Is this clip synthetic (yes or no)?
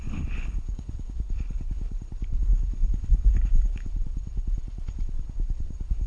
yes